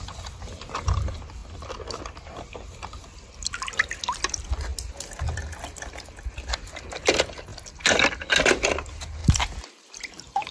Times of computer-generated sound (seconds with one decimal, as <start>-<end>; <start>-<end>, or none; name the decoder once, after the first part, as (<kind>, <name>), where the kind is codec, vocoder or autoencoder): 0.0-1.4 (vocoder, BigVGAN v2); 4.2-4.7; 5.2-7.5; 8.5-10.5